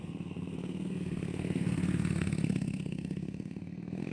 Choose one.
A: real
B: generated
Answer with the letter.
B